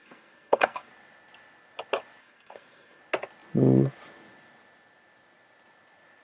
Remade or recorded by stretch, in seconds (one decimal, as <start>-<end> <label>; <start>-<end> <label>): 0.0-0.9 remade; 0.9-2.2 recorded; 2.2-3.0 remade; 3.0-6.2 recorded